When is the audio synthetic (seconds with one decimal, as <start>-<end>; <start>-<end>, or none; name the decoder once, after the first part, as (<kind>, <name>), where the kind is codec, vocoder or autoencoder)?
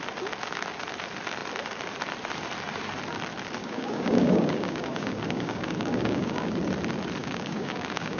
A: 3.6-6.5 (codec, DAC); 7.2-8.2